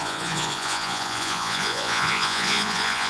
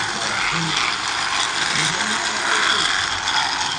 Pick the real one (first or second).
second